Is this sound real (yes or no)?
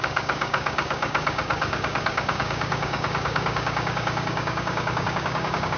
no